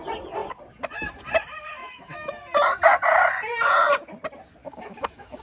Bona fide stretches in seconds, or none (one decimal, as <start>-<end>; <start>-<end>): 0.0-1.8; 2.3-4.6

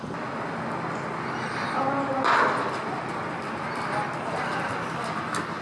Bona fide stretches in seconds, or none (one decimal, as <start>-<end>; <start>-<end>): 0.0-5.6

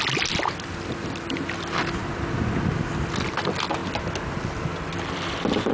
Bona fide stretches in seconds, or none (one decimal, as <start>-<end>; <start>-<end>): 0.0-5.7

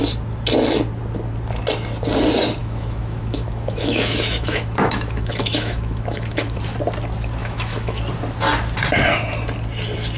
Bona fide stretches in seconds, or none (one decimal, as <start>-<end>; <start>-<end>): 0.0-2.6; 6.6-7.4; 8.0-10.2